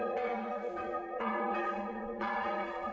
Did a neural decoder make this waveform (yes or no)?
yes